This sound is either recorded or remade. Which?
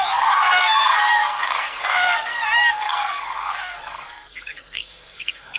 remade